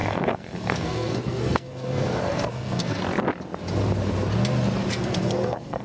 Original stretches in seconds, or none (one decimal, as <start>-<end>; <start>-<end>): 3.0-4.9